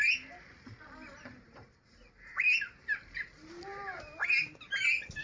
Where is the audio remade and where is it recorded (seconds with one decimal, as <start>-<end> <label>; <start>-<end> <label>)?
0.0-5.2 recorded